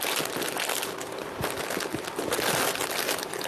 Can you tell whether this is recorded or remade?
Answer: recorded